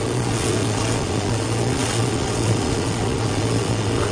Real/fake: fake